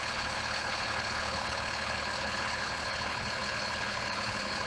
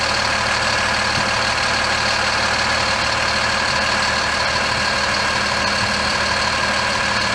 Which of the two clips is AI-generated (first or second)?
first